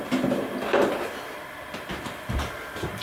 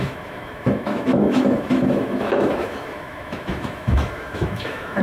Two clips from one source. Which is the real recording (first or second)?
first